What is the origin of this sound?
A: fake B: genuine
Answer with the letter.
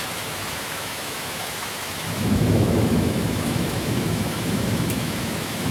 A